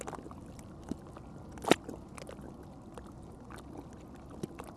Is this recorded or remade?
recorded